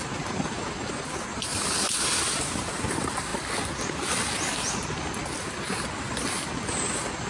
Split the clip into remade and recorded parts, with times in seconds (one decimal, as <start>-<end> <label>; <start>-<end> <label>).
0.0-7.3 recorded